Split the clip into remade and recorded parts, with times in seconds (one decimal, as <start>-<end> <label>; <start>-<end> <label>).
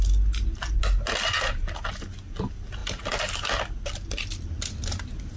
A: 0.0-5.4 recorded